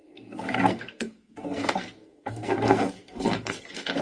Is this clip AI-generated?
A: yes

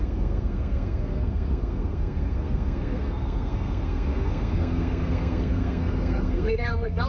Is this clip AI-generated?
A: yes